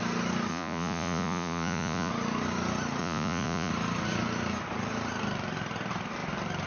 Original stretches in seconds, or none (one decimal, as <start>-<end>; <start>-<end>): 0.0-0.5; 2.1-3.0; 3.7-6.7